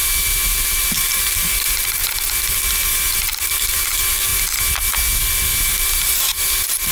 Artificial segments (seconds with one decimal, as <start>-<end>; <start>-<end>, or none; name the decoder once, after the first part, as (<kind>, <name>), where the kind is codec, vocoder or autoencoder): 0.7-2.0 (vocoder, BigVGAN v2); 3.1-4.3; 5.6-6.9